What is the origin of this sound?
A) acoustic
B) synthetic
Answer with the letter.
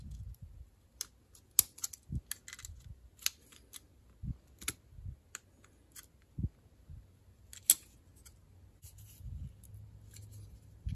A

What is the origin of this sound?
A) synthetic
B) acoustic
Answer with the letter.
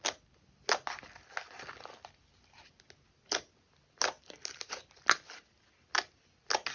B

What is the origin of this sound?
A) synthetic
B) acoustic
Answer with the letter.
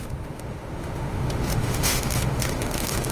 A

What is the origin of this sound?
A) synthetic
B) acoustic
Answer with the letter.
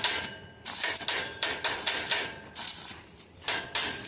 B